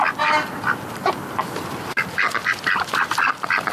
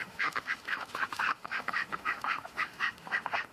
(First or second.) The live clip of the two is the first